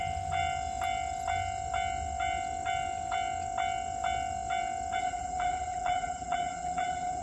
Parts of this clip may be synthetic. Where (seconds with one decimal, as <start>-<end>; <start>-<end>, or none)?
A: 5.0-7.2